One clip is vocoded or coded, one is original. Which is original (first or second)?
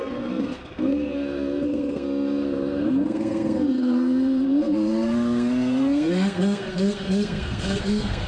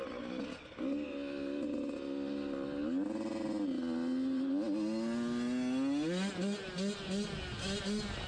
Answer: second